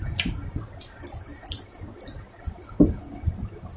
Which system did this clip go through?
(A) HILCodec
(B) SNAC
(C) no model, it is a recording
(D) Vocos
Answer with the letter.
C